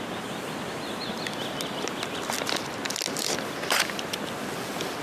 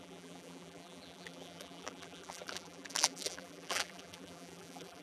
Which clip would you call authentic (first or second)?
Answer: first